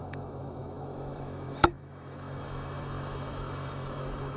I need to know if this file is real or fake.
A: fake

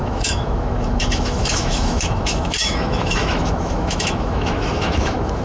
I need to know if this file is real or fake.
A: fake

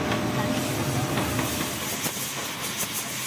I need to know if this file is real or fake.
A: real